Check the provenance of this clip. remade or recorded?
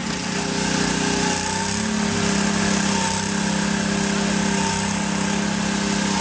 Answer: recorded